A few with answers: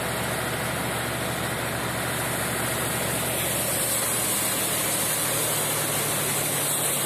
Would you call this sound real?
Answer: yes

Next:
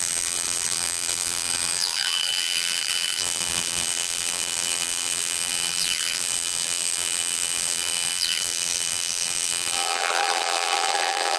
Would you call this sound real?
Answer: no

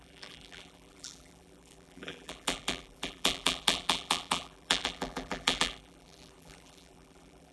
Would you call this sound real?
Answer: no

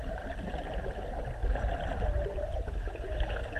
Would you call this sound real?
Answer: yes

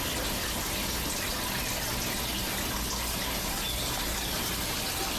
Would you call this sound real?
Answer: yes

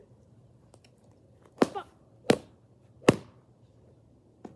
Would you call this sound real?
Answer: yes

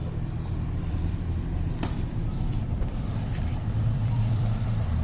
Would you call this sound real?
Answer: no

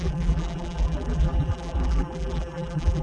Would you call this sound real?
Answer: no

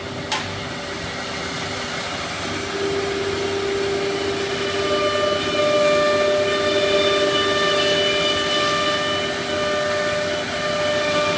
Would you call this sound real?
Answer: yes